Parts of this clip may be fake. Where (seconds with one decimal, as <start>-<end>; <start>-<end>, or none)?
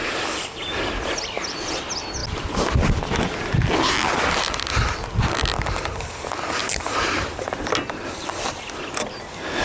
6.6-7.4